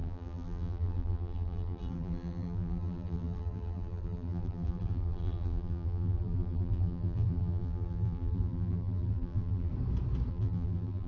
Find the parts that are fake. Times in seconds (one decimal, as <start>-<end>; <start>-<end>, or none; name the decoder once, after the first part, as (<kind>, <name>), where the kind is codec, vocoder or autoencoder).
0.0-9.7 (vocoder, BigVGAN v2); 10.3-11.1